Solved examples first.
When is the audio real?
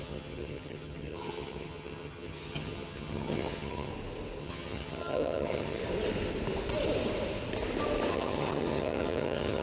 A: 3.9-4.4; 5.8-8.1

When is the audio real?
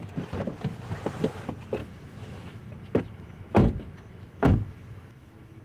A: 0.0-1.8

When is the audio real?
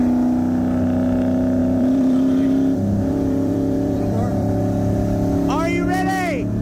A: 0.0-1.6; 4.6-6.6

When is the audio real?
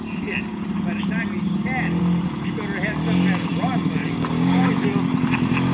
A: 0.0-4.0; 4.7-5.7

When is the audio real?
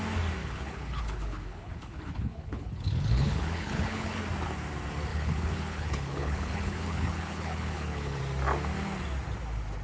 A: 0.0-0.4; 4.2-5.1; 8.2-9.8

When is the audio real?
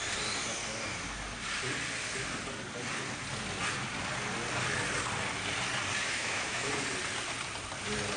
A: 0.0-6.0; 6.7-8.2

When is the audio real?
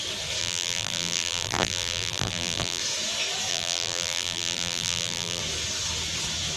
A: 0.0-0.4; 2.8-3.5; 5.4-6.6